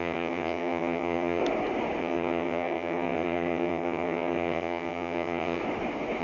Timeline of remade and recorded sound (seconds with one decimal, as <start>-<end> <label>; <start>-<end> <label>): 0.0-1.4 remade; 1.4-2.0 recorded; 2.0-5.6 remade; 5.6-6.2 recorded